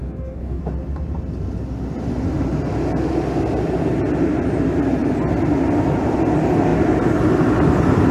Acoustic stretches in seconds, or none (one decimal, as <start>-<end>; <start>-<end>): 0.6-8.1

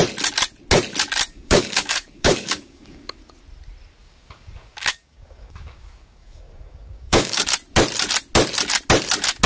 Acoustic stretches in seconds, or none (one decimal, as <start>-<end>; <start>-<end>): 0.0-1.3; 3.2-4.0; 7.4-9.5

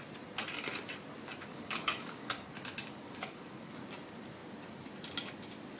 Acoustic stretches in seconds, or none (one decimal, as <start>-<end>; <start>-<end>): 0.0-1.5; 2.3-2.8; 3.7-5.8